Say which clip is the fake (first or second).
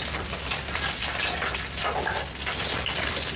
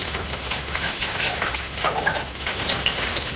second